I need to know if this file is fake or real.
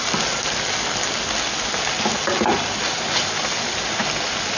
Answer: real